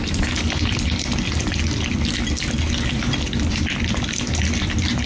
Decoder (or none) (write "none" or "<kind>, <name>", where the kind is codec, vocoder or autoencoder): none